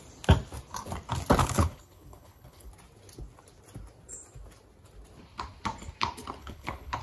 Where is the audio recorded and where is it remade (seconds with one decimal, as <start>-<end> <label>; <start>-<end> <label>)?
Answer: 0.0-1.4 recorded; 1.4-2.7 remade; 2.7-6.4 recorded; 6.4-7.0 remade